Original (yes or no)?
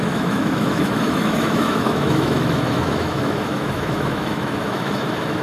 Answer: no